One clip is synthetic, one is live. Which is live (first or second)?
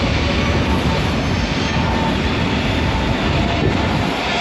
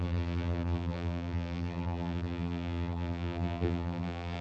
first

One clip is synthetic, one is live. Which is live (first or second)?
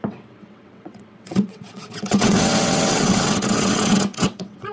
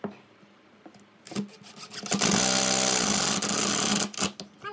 second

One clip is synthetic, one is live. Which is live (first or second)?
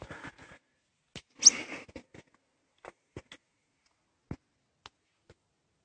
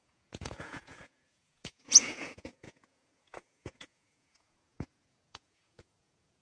first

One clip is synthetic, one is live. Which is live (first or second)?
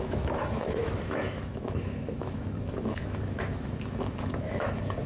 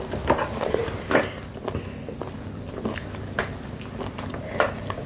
second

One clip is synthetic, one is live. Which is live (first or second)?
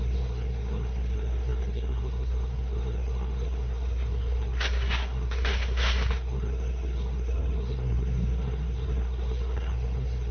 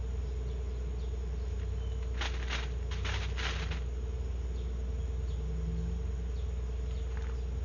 second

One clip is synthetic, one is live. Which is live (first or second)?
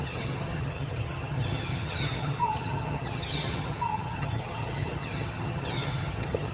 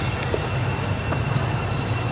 second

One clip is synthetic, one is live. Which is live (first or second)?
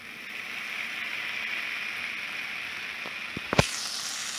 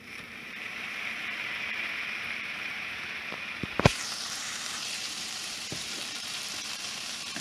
first